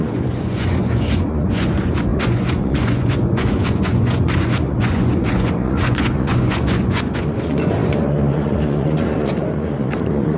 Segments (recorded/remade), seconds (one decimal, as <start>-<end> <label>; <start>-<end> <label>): 0.0-10.4 remade